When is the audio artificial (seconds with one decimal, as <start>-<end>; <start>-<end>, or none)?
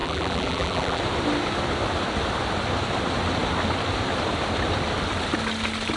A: 0.0-1.0